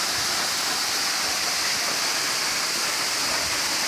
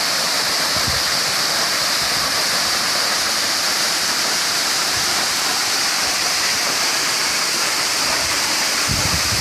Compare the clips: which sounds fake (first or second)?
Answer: second